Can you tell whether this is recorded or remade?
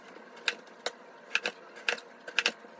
recorded